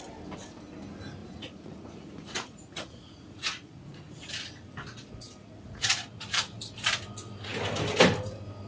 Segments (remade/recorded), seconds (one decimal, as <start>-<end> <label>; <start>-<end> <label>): 0.0-1.2 recorded; 1.2-4.3 remade; 4.3-5.4 recorded; 5.4-6.0 remade; 6.0-8.7 recorded